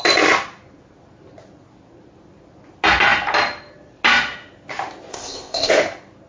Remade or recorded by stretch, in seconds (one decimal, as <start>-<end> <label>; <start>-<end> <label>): 0.0-5.1 recorded; 5.1-5.7 remade; 5.7-6.3 recorded